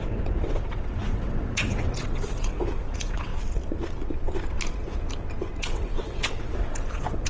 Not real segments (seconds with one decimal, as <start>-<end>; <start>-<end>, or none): 0.0-3.3; 5.6-7.3